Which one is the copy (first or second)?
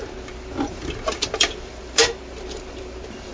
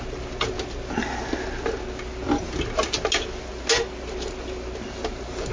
first